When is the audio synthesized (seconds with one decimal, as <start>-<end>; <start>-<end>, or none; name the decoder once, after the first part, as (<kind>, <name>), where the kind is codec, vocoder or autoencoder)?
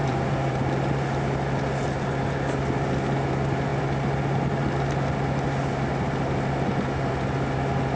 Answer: 0.0-0.6 (vocoder, BigVGAN v2)